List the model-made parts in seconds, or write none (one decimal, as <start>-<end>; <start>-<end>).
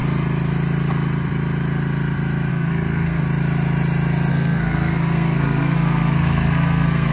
2.5-3.2; 4.3-7.1